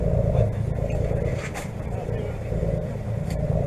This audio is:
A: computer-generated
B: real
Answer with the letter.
B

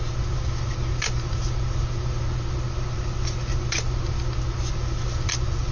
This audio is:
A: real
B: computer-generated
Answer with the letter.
A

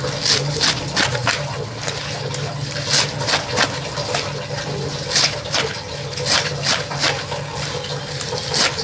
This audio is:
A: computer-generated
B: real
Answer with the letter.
B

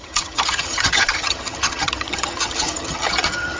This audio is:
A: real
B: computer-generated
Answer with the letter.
B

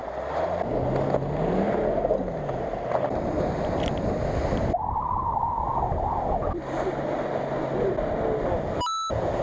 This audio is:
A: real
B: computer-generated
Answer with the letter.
A